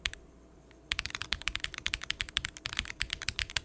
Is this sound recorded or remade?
recorded